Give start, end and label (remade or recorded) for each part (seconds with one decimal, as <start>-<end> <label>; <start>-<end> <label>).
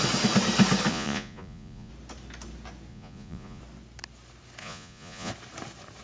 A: 0.0-0.9 recorded; 0.9-1.9 remade; 1.9-2.9 recorded; 2.9-3.6 remade; 3.6-4.6 recorded; 4.6-5.3 remade; 5.3-6.0 recorded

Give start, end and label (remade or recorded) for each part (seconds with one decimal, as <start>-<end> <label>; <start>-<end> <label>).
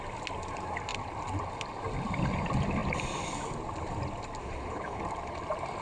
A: 0.0-4.4 recorded; 4.4-5.0 remade; 5.0-5.8 recorded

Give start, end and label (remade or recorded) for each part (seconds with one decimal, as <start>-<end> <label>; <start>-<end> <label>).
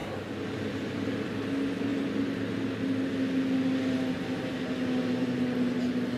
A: 0.0-6.2 recorded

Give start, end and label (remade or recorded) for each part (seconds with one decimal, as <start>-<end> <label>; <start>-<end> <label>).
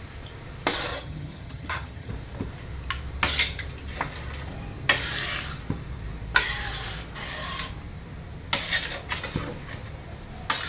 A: 0.0-0.9 recorded; 0.9-2.1 remade; 2.1-10.7 recorded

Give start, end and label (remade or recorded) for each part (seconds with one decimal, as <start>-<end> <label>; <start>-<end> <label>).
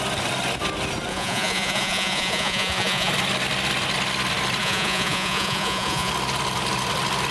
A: 0.0-1.1 recorded; 1.1-3.1 remade; 3.1-4.6 recorded; 4.6-6.1 remade; 6.1-7.3 recorded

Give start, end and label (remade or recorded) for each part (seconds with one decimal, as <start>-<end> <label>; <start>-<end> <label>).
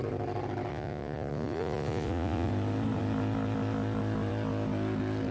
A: 0.0-0.7 recorded; 0.7-2.5 remade; 2.5-5.3 recorded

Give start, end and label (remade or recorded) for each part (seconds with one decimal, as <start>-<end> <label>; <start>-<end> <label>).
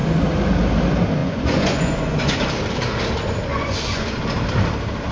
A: 0.0-1.2 recorded; 1.2-2.4 remade; 2.4-3.5 recorded; 3.5-4.2 remade; 4.2-5.1 recorded